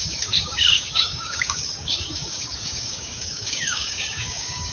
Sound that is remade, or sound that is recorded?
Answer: remade